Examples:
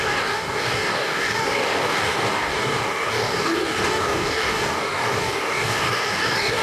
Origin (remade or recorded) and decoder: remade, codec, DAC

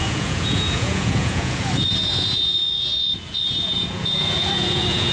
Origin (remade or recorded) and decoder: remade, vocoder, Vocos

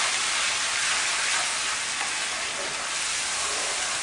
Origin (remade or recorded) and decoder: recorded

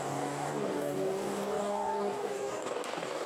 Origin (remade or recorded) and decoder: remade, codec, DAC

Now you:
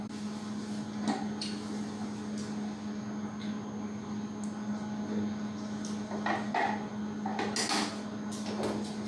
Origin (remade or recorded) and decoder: recorded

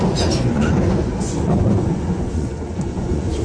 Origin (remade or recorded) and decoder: remade, vocoder, Vocos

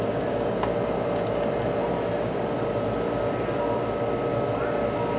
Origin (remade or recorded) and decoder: recorded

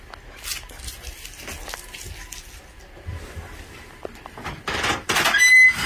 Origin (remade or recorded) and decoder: recorded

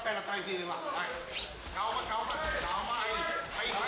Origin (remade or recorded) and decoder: recorded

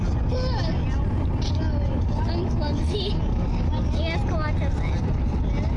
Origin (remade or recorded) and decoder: recorded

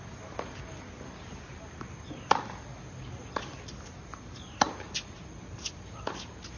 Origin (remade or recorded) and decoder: recorded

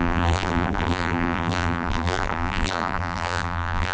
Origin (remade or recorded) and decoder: remade, vocoder, BigVGAN v2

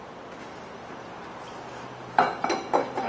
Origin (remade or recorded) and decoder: recorded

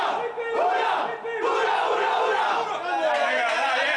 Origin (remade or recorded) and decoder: recorded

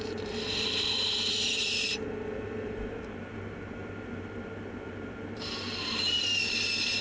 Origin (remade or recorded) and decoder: remade, vocoder, BigVGAN v2